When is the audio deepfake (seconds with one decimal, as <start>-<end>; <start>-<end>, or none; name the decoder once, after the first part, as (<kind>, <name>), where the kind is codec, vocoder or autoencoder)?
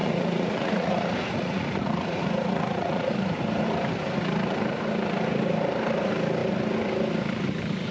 0.0-3.1 (vocoder, Vocos)